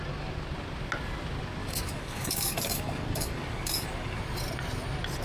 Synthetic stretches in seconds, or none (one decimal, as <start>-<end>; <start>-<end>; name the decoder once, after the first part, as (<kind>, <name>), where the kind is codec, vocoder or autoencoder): 1.6-4.2 (codec, DAC)